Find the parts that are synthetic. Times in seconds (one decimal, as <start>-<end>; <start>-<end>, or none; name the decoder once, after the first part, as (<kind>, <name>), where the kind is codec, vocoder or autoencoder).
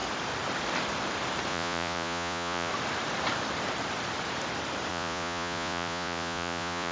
1.5-2.7 (vocoder, Vocos); 4.9-6.9